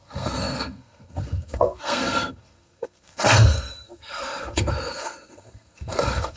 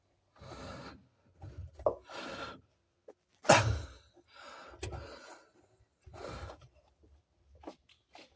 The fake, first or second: first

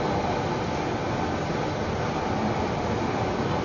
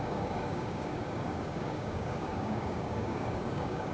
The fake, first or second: second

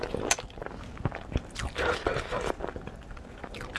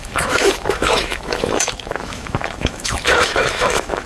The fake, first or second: second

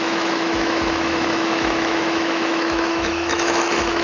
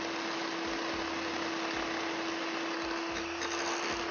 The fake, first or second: first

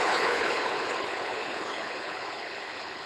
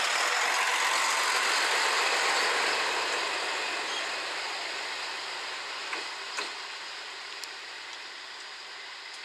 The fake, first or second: first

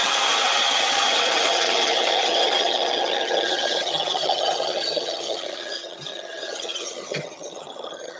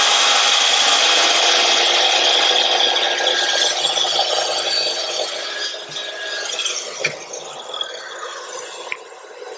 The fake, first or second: first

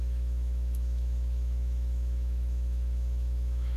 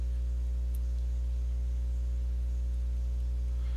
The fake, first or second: first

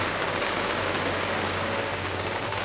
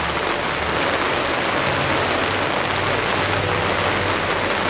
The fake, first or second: first